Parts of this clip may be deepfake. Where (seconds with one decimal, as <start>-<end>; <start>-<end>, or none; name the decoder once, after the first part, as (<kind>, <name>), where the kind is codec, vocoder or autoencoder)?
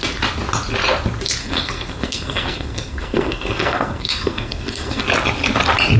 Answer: 1.4-5.0 (codec, SNAC)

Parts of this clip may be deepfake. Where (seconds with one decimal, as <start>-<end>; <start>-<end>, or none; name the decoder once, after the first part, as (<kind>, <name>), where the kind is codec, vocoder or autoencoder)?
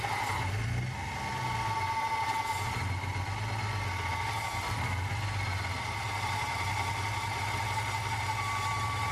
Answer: 5.1-7.6 (vocoder, BigVGAN v2)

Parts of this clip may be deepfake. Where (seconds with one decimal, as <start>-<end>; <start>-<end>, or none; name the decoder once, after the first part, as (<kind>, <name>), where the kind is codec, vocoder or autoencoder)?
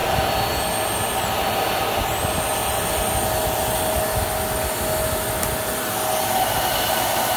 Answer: none